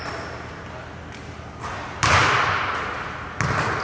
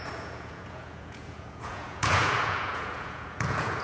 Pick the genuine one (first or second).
first